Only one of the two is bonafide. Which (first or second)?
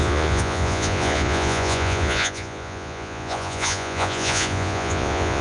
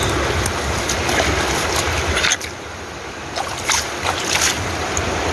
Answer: second